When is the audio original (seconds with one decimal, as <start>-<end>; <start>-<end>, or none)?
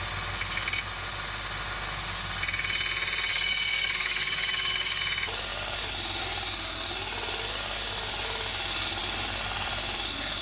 0.0-3.3; 5.0-10.4